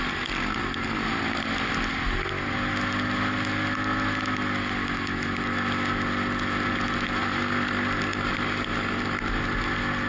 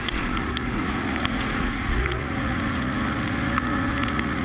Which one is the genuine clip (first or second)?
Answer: first